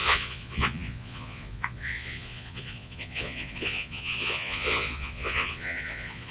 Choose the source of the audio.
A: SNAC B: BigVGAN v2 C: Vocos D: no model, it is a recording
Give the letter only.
C